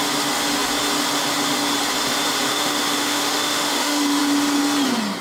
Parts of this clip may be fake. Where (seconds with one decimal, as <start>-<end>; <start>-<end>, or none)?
2.5-4.2